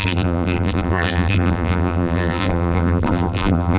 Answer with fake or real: fake